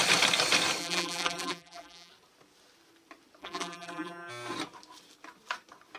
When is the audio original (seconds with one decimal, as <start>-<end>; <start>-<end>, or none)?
0.0-0.8; 2.1-3.4; 4.3-6.0